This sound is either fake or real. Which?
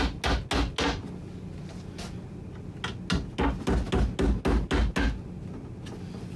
real